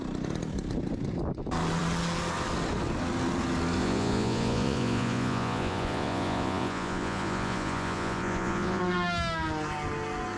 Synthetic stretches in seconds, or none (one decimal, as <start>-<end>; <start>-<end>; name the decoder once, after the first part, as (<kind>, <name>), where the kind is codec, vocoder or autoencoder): 3.8-8.8 (vocoder, Vocos)